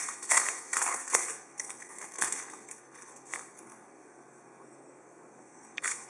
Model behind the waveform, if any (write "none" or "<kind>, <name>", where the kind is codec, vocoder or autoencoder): codec, SNAC